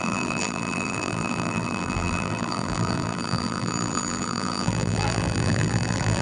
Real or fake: fake